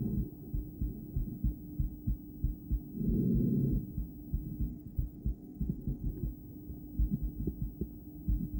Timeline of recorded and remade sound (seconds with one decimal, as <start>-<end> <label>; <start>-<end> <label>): 0.0-4.7 recorded; 4.7-6.1 remade; 6.1-8.6 recorded